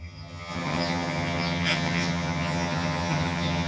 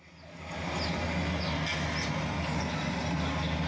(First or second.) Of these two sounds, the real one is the second